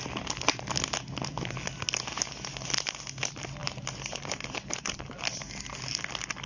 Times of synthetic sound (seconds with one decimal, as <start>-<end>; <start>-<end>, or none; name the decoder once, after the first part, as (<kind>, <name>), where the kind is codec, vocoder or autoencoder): none